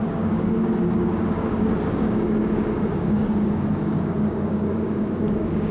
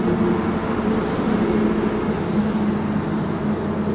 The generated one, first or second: first